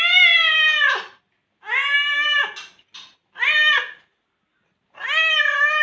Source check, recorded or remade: recorded